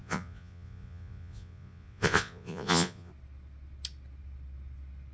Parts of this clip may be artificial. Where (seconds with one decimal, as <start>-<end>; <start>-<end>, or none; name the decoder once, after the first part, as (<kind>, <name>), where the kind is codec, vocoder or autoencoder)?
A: 0.0-3.1 (vocoder, Vocos)